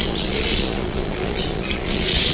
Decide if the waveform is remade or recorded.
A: remade